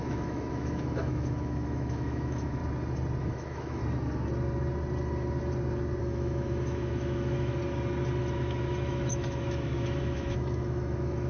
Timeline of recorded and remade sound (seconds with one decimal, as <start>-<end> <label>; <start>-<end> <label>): 0.0-2.6 remade; 2.6-3.2 recorded; 3.2-3.8 remade; 3.8-6.0 recorded; 6.0-7.6 remade; 7.6-8.2 recorded; 8.2-11.3 remade